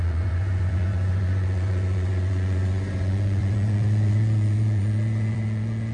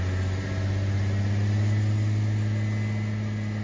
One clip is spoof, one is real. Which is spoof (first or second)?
first